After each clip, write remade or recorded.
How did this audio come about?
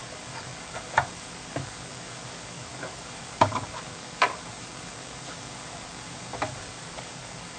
remade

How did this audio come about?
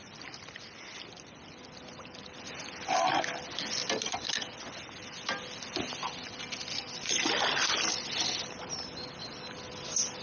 recorded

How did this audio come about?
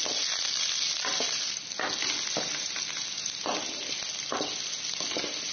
recorded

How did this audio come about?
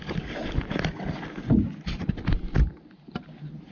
recorded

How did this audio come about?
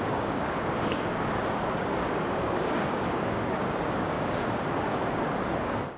remade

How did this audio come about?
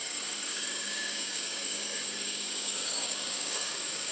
remade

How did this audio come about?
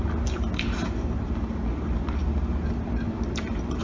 recorded